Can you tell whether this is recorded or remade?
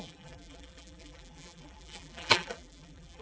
remade